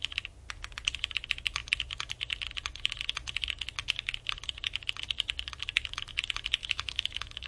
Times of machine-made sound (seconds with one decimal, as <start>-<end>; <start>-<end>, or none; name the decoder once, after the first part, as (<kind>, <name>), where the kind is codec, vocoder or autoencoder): 6.6-7.5 (autoencoder, DAC-VAE)